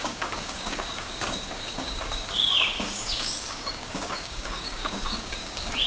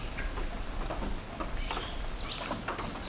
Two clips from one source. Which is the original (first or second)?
second